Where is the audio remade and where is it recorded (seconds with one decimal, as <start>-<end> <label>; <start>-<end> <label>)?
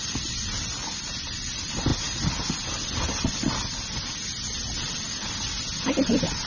0.0-6.5 recorded